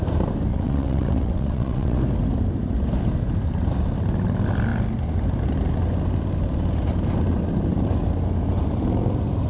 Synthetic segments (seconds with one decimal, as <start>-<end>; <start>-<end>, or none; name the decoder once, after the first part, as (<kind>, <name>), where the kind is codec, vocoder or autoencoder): 0.5-2.0 (vocoder, WaveNeXt)